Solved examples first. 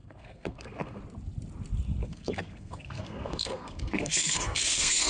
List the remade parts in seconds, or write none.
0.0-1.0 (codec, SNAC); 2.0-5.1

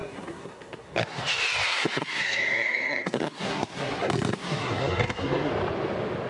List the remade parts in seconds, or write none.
0.0-1.2 (codec, SNAC); 1.7-5.5

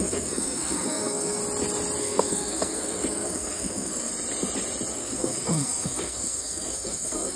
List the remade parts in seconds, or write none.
0.0-1.4 (codec, SNAC); 2.0-4.1; 4.9-7.4

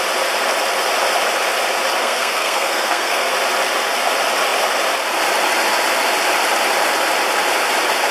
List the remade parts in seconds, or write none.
2.0-3.3 (codec, SNAC)